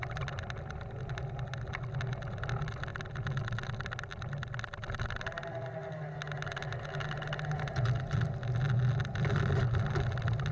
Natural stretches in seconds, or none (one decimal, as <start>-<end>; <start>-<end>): 0.0-10.5